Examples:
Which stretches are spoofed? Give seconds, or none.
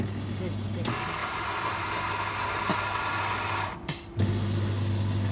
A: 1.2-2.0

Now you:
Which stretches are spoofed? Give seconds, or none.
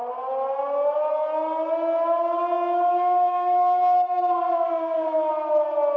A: 2.9-5.3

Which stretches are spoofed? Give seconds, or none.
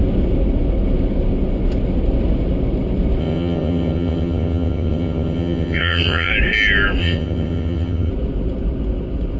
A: 3.2-6.3; 7.0-8.1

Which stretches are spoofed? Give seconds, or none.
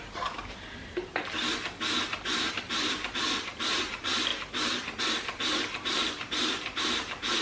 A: 0.0-1.1; 2.2-4.3; 5.0-7.4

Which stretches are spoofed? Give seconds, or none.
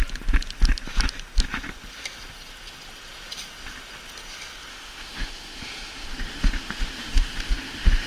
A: 4.7-8.1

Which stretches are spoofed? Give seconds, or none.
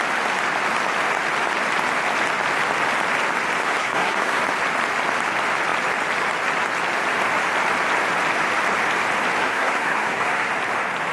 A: 3.6-4.4; 9.4-10.5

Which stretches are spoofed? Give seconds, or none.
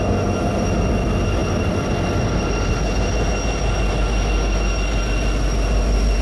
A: none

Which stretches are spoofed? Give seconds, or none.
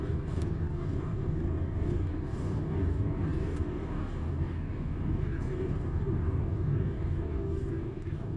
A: 0.0-8.4